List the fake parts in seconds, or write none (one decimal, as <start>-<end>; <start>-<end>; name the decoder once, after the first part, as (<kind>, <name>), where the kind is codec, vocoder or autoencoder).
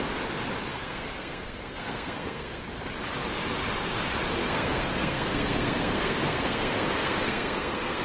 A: 0.7-2.6 (codec, SNAC); 4.4-8.0